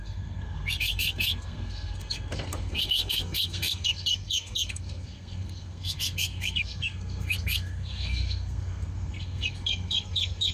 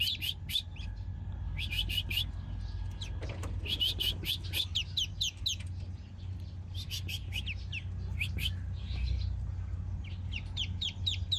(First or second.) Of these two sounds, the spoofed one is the first